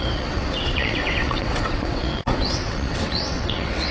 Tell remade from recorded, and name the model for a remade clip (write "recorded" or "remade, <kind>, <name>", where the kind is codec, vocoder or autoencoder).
remade, vocoder, WaveNeXt